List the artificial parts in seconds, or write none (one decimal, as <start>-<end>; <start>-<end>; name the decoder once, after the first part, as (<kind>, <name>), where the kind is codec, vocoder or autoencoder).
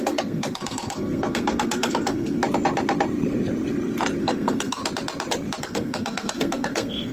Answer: 0.0-2.4 (codec, SNAC); 4.2-4.8; 5.6-7.1